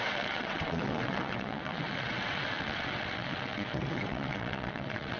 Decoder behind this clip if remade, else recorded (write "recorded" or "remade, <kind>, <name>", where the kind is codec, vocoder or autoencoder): remade, vocoder, WaveNeXt